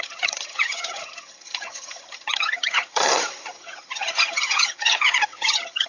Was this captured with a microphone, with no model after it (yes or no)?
no